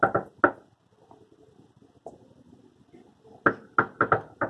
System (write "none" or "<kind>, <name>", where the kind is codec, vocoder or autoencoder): none